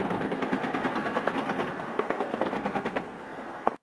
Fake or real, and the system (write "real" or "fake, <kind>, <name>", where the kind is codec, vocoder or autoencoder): fake, codec, SNAC